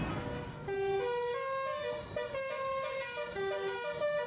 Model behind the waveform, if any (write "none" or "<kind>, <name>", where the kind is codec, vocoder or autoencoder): none